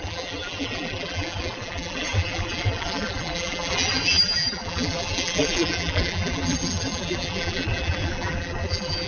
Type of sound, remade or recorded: remade